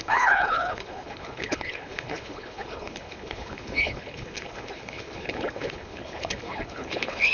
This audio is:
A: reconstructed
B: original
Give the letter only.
A